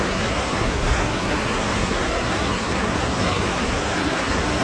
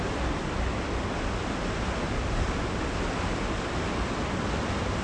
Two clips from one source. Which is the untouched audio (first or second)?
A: second